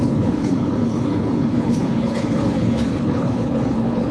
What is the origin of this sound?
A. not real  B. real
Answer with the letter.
A